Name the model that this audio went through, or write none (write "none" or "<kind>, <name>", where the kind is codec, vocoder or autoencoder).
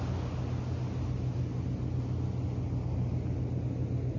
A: none